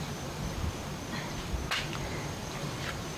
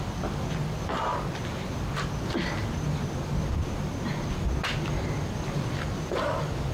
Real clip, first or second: second